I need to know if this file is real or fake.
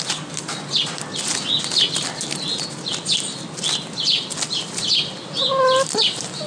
real